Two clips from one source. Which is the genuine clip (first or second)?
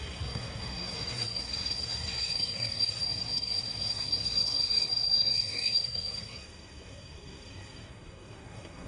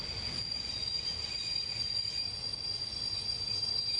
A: second